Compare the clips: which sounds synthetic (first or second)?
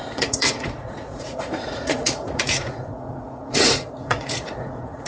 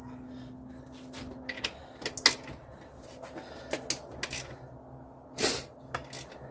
first